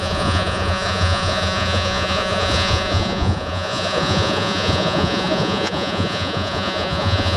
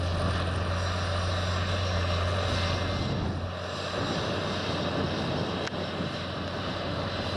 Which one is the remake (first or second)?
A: first